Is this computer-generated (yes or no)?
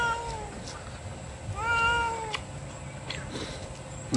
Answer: no